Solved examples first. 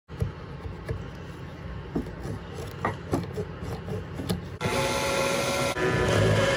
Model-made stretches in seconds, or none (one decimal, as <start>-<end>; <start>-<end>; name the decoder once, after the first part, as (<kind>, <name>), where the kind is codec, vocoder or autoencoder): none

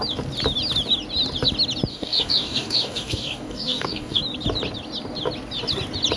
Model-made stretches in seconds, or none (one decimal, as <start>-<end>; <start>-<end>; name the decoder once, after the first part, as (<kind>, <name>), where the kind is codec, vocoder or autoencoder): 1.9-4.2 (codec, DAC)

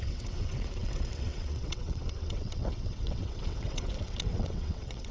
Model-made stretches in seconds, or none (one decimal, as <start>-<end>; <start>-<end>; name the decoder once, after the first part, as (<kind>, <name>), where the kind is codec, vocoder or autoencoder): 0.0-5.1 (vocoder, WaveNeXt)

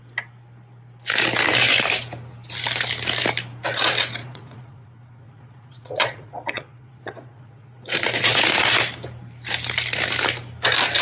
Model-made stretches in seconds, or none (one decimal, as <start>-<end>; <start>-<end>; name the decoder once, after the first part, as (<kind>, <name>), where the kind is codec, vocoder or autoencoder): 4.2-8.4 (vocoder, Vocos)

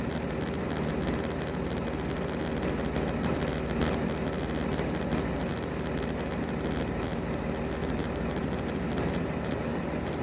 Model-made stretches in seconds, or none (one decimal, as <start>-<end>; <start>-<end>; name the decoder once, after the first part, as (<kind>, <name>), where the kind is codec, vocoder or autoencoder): 7.8-10.2 (vocoder, BigVGAN v2)

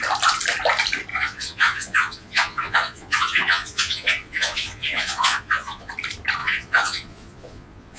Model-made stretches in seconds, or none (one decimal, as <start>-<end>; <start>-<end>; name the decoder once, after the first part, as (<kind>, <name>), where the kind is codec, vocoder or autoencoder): 1.1-5.9 (vocoder, Vocos); 6.4-8.0

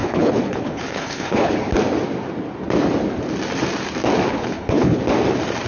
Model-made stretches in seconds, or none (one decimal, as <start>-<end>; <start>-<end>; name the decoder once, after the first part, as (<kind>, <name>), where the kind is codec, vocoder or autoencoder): 0.0-1.5 (codec, HILCodec); 4.3-5.0

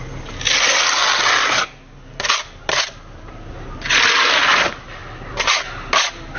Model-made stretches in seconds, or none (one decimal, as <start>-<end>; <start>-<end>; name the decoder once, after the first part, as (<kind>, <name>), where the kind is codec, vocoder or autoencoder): none